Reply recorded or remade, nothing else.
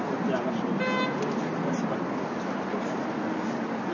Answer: recorded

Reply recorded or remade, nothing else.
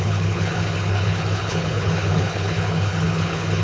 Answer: remade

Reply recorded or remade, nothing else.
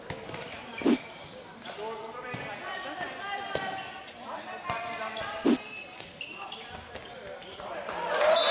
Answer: recorded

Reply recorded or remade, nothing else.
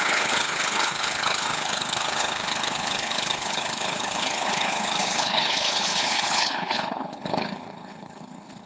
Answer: remade